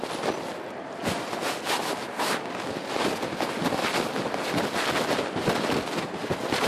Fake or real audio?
real